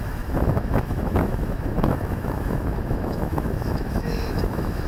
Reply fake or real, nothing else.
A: fake